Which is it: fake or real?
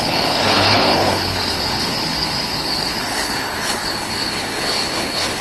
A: fake